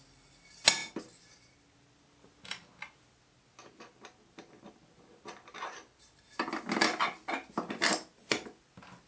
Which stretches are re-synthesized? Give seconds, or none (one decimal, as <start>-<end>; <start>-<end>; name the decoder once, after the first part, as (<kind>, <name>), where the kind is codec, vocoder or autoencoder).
none